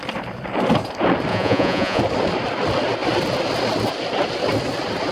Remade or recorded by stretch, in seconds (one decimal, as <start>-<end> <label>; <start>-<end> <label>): 0.0-1.3 recorded; 1.3-2.0 remade; 2.0-5.1 recorded